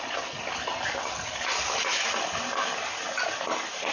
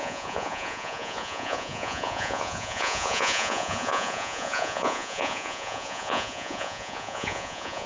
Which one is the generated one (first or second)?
second